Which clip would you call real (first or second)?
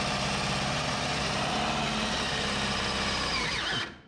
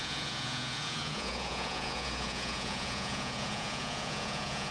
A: first